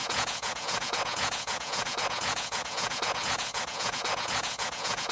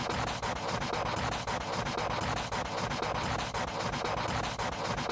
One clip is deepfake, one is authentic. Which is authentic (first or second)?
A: second